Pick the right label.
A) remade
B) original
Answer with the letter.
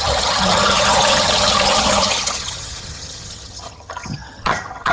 A